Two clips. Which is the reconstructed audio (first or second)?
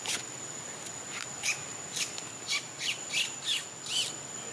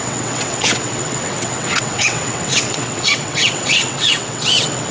second